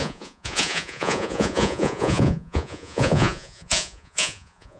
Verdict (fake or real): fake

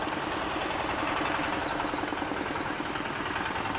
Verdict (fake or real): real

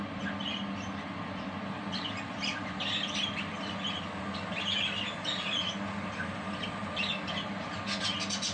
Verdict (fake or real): real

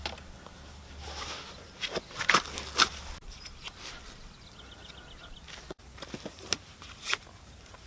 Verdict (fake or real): real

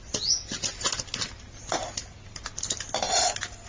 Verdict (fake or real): real